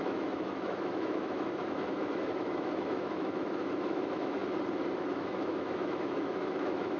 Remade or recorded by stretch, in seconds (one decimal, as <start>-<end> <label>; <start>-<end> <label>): 0.0-4.4 remade; 4.4-5.1 recorded; 5.1-7.0 remade